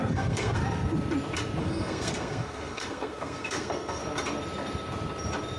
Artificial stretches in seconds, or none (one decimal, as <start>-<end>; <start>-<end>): 0.0-0.6; 1.6-4.0